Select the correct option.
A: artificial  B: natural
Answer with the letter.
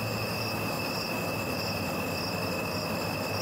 A